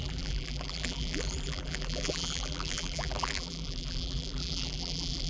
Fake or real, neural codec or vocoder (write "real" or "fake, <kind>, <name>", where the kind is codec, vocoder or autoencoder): fake, vocoder, BigVGAN v2